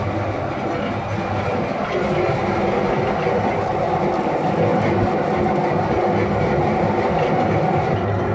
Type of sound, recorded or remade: recorded